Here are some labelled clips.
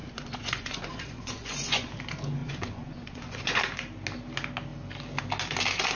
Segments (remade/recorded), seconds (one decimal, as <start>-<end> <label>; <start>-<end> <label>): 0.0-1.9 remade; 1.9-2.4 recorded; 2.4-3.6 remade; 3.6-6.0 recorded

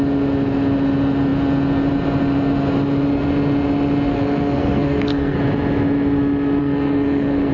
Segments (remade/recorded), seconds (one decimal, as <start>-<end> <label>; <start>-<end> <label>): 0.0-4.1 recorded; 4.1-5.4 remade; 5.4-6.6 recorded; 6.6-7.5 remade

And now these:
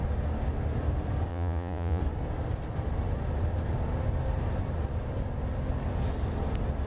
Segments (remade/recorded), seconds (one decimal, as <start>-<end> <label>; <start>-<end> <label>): 0.0-1.3 recorded; 1.3-2.0 remade; 2.0-6.9 recorded

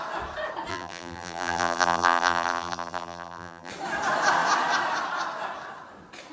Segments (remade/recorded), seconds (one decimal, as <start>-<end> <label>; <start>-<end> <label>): 0.0-0.7 recorded; 0.7-3.7 remade; 3.7-6.3 recorded

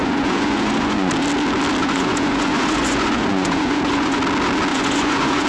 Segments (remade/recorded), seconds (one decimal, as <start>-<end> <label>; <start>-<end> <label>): 0.0-1.1 remade; 1.1-1.8 recorded; 1.8-4.2 remade; 4.2-4.7 recorded; 4.7-5.5 remade

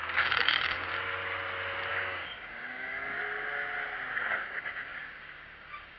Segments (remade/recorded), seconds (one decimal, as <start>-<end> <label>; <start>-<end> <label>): 0.0-0.9 remade; 0.9-1.9 recorded; 1.9-3.2 remade; 3.2-4.2 recorded; 4.2-6.0 remade